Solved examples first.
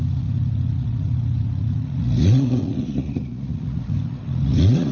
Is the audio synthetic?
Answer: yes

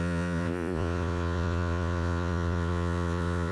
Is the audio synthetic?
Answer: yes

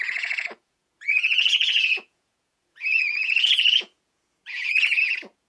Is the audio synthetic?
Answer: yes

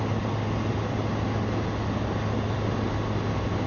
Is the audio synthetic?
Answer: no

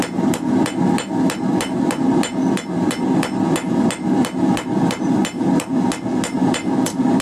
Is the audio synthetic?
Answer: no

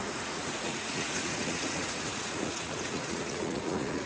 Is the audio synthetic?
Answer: yes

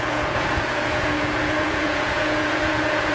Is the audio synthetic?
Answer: yes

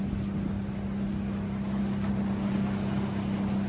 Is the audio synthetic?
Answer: no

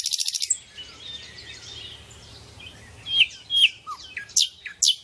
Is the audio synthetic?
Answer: no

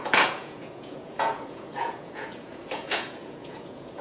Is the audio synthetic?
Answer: yes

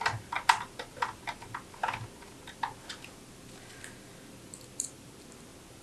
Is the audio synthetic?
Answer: no